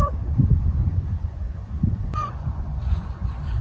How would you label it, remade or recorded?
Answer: remade